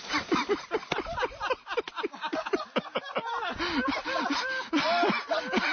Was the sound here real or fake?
real